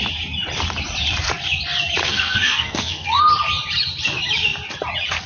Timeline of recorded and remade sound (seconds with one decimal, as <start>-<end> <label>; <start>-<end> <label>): 0.0-2.0 recorded; 2.0-3.3 remade; 3.3-5.3 recorded